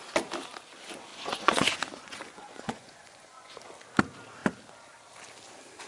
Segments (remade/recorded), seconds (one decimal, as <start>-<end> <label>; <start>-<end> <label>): 0.0-1.1 recorded; 1.1-3.6 remade; 3.6-5.9 recorded